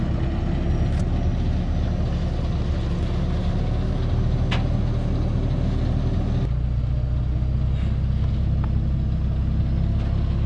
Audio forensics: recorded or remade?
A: recorded